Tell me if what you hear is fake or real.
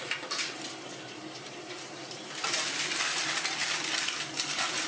fake